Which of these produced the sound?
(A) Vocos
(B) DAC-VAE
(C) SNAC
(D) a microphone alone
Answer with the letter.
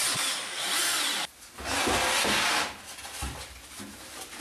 D